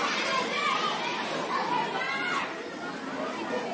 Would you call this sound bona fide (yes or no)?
yes